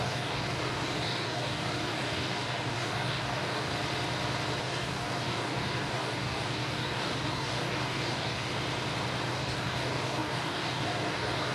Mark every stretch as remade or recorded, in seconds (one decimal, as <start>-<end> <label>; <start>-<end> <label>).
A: 0.0-3.7 remade; 3.7-4.6 recorded; 4.6-8.5 remade; 8.5-9.3 recorded; 9.3-11.5 remade